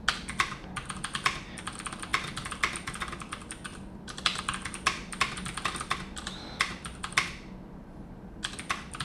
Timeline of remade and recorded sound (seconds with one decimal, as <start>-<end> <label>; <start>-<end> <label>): 0.0-3.7 recorded; 3.7-4.4 remade; 4.4-9.0 recorded

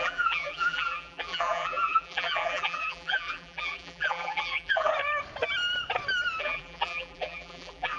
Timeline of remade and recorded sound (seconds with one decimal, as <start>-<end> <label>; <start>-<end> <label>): 0.0-4.9 remade; 4.9-6.4 recorded; 6.4-8.0 remade